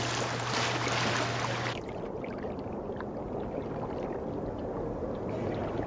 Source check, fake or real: real